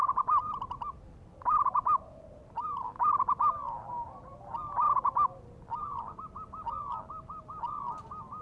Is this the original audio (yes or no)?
no